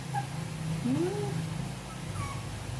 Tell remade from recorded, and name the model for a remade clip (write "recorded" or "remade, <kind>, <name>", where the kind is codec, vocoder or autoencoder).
recorded